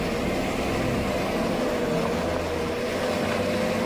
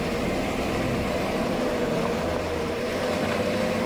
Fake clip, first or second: second